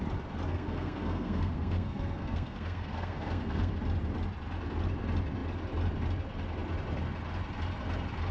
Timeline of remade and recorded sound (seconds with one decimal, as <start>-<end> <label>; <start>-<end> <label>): 0.0-0.5 recorded; 0.5-3.7 remade; 3.7-8.3 recorded

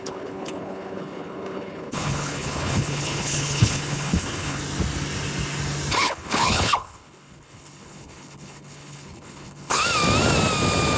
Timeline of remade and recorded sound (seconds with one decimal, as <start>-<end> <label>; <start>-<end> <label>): 0.0-4.6 remade; 4.6-6.0 recorded; 6.0-9.8 remade; 9.8-11.0 recorded

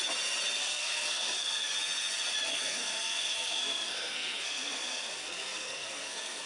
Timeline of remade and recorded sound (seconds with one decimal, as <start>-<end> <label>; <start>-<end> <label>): 0.0-0.6 recorded; 0.6-1.7 remade; 1.7-2.5 recorded; 2.5-6.5 remade

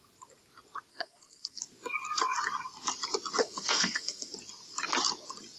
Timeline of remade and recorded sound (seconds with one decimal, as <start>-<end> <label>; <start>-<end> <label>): 0.0-0.9 recorded; 0.9-1.6 remade; 1.6-3.4 recorded; 3.4-4.3 remade; 4.3-5.6 recorded

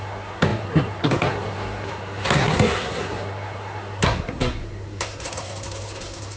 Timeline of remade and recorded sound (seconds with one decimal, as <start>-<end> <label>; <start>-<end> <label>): 0.0-6.4 remade